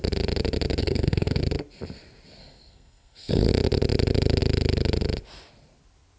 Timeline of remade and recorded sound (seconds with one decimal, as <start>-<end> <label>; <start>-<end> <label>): 0.0-0.8 recorded; 0.8-1.4 remade; 1.4-2.4 recorded; 2.4-3.4 remade; 3.4-6.2 recorded